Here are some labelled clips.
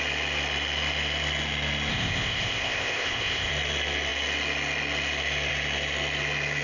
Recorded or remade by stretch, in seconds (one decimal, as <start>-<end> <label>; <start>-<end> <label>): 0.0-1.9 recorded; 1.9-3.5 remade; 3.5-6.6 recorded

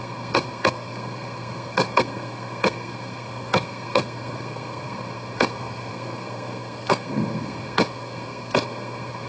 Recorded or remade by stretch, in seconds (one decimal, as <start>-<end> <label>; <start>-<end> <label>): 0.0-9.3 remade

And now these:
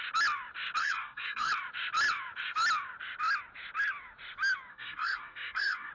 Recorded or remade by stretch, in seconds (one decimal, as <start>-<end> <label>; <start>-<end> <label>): 0.0-0.8 recorded; 0.8-1.5 remade; 1.5-4.7 recorded; 4.7-5.9 remade